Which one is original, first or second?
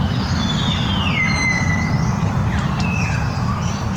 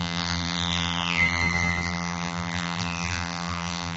first